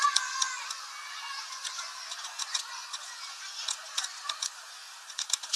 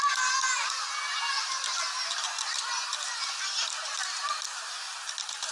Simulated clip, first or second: first